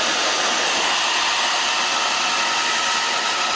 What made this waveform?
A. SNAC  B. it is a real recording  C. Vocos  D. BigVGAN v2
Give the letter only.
B